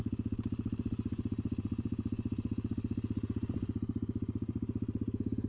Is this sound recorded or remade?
remade